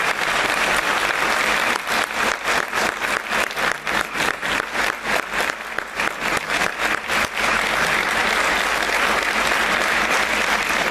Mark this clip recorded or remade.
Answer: remade